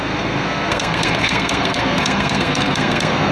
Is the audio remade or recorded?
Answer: remade